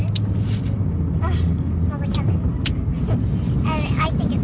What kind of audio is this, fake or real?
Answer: real